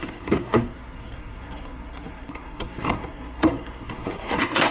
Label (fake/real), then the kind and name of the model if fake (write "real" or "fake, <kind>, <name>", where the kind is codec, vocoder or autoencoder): fake, codec, SNAC